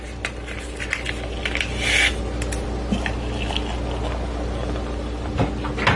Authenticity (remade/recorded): recorded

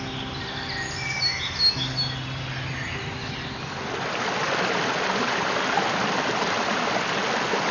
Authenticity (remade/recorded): recorded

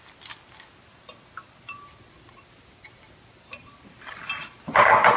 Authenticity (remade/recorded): recorded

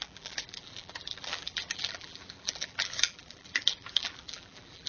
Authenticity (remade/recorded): remade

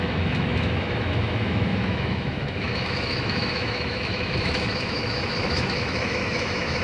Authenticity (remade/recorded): remade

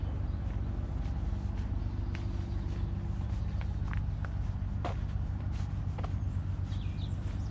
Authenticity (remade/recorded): recorded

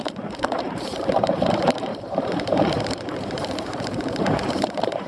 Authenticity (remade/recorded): remade